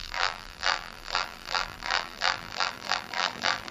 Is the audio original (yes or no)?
no